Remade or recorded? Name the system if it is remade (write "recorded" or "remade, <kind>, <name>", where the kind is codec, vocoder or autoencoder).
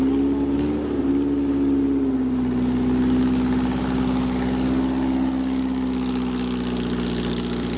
recorded